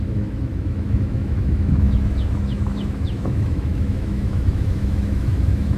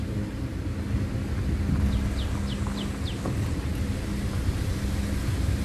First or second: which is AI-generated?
first